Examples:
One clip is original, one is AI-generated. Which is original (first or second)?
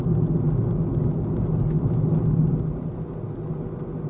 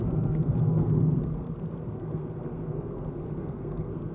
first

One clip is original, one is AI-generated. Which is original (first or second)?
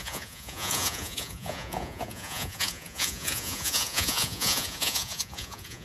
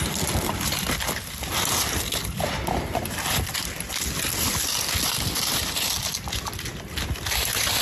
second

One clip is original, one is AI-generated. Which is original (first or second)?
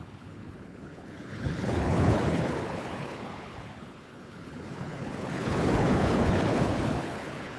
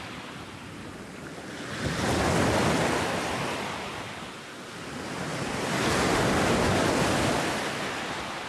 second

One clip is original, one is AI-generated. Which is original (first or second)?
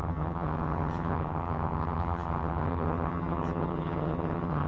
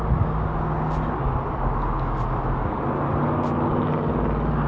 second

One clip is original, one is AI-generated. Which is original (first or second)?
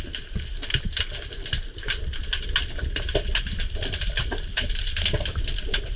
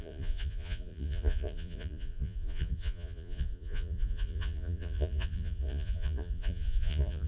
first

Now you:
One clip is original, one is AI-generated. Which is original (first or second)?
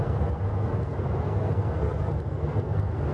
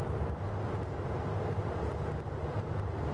second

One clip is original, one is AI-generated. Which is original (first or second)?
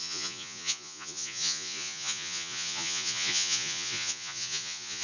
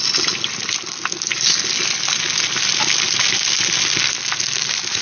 second